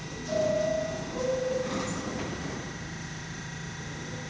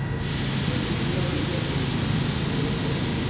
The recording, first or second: second